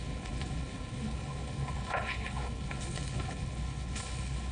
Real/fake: fake